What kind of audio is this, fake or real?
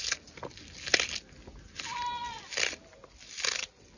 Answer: real